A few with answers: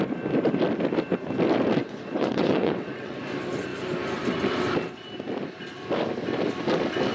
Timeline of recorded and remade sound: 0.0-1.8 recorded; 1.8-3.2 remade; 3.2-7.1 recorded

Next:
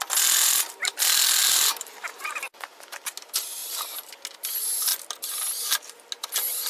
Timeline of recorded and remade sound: 0.0-1.4 recorded; 1.4-2.7 remade; 2.7-3.6 recorded; 3.6-4.1 remade; 4.1-6.7 recorded

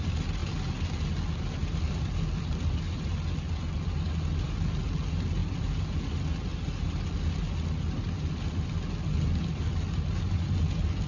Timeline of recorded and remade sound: 0.0-11.1 recorded

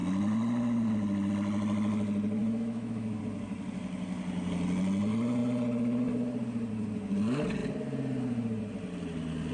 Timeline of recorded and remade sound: 0.0-2.4 recorded; 2.4-3.2 remade; 3.2-9.5 recorded

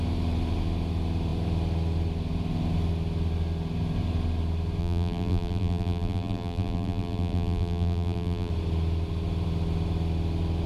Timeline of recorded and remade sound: 0.0-4.8 recorded; 4.8-8.5 remade; 8.5-10.7 recorded

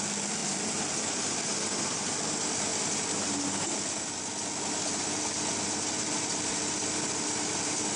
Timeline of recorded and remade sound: 0.0-8.0 recorded

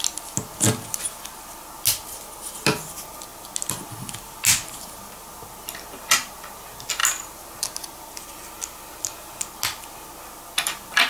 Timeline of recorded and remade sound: 0.0-11.1 recorded